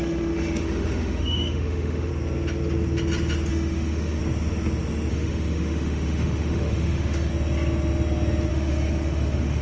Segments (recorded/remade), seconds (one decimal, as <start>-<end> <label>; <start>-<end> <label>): 0.0-2.1 remade; 2.1-3.5 recorded; 3.5-4.2 remade; 4.2-5.1 recorded; 5.1-7.3 remade; 7.3-8.5 recorded; 8.5-9.6 remade